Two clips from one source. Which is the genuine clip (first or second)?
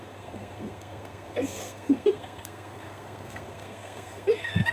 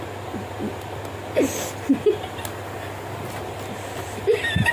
second